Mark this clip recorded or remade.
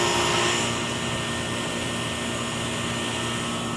recorded